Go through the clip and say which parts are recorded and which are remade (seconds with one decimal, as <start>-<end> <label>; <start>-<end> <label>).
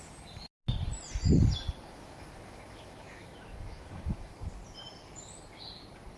0.0-1.9 recorded; 1.9-4.6 remade; 4.6-6.2 recorded